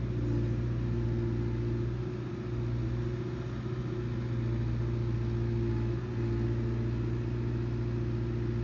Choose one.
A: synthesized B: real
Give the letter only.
B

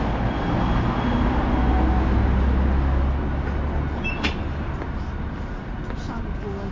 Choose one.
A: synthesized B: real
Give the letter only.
B